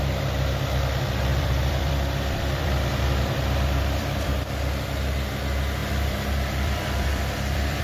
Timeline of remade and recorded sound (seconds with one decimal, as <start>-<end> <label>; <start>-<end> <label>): 0.0-1.3 recorded; 1.3-4.3 remade; 4.3-5.8 recorded; 5.8-7.8 remade